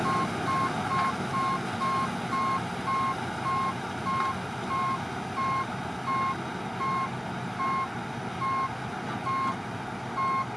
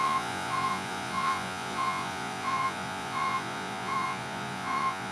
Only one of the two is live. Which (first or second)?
first